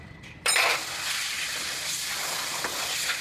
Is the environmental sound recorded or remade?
remade